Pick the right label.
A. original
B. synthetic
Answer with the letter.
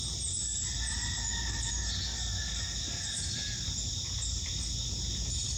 A